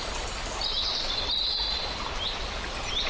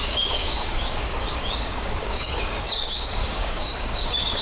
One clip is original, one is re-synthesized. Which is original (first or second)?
first